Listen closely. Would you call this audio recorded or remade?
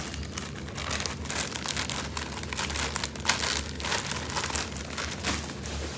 recorded